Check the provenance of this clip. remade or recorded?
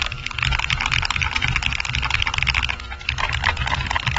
recorded